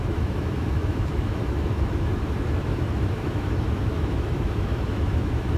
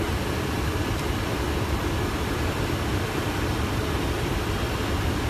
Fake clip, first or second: first